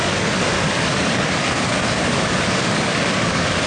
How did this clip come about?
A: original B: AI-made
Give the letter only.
B